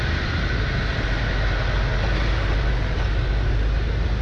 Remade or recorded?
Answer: recorded